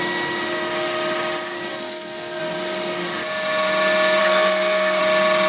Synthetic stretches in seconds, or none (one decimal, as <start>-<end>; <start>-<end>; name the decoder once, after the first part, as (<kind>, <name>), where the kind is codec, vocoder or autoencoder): 1.7-2.4 (codec, SNAC); 4.2-5.0